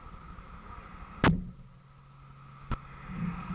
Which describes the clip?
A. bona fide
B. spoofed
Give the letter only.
A